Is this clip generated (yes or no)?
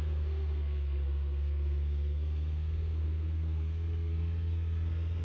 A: yes